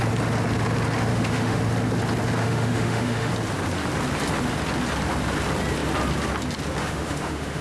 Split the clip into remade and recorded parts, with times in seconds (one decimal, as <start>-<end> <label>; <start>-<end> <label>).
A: 0.0-1.1 recorded; 1.1-1.6 remade; 1.6-2.4 recorded; 2.4-3.3 remade; 3.3-6.8 recorded; 6.8-7.6 remade